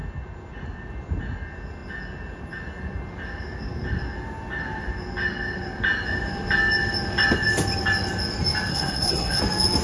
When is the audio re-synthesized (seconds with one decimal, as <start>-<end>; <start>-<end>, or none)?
8.7-9.4